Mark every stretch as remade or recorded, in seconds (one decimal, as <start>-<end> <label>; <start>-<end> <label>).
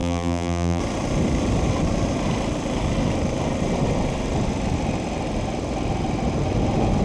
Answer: 0.0-0.8 remade; 0.8-7.0 recorded